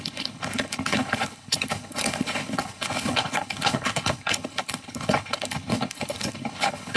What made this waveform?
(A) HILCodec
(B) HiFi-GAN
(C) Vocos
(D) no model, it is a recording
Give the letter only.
A